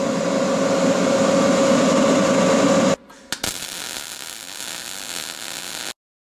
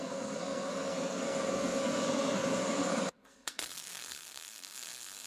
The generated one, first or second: second